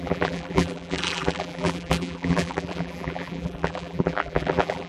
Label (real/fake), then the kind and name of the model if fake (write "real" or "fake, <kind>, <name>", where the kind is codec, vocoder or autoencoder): fake, vocoder, BigVGAN v2